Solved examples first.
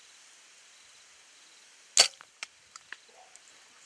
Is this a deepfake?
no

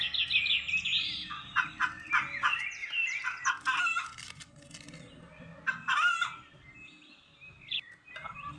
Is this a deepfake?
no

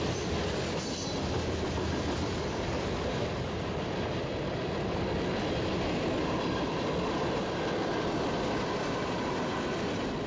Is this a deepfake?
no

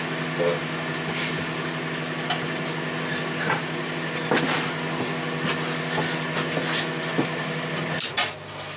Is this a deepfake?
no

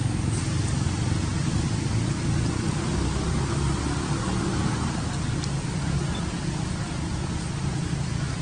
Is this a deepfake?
no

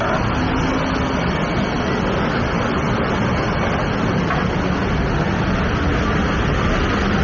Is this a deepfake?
no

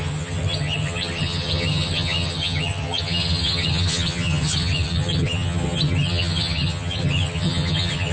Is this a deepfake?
yes